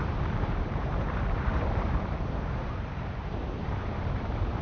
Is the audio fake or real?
fake